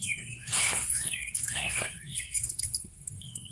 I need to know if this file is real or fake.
fake